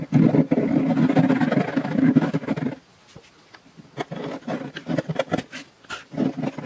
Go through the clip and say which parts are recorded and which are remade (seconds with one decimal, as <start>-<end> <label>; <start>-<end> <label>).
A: 0.0-1.7 recorded; 1.7-2.5 remade; 2.5-6.7 recorded